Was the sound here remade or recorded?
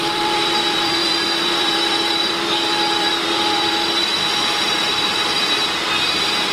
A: remade